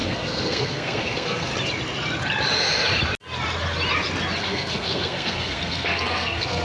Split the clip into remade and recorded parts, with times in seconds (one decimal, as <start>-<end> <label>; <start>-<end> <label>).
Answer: 0.0-1.5 remade; 1.5-4.4 recorded; 4.4-6.6 remade

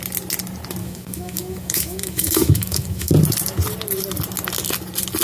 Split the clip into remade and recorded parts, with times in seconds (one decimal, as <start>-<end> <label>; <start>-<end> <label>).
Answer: 0.0-0.8 recorded; 0.8-3.1 remade; 3.1-5.2 recorded

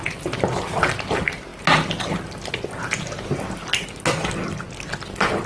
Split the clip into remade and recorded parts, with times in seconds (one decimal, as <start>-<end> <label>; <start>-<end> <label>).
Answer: 0.0-5.5 recorded

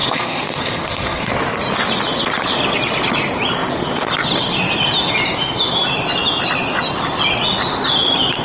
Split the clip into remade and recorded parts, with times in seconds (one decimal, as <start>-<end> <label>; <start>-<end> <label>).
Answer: 0.0-1.3 remade; 1.3-8.4 recorded